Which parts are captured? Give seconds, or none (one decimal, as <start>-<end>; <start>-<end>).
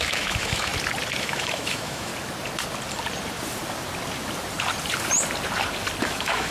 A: 0.7-1.2; 2.1-6.0